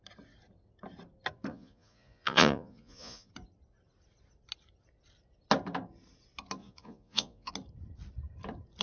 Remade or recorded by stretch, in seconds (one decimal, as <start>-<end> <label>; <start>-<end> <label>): 0.0-1.5 recorded; 1.5-3.3 remade; 3.3-6.6 recorded; 6.6-7.5 remade; 7.5-8.8 recorded